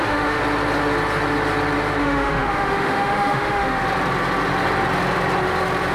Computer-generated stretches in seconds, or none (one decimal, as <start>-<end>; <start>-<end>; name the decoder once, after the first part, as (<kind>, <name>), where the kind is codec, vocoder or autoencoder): 0.0-0.4 (autoencoder, DAC-VAE); 2.0-3.8